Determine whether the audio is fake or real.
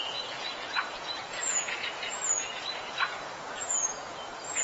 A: fake